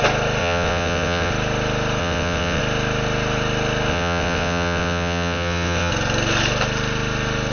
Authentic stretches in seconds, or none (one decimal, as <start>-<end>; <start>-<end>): 0.0-0.4; 1.3-2.0; 2.6-3.9; 5.9-7.5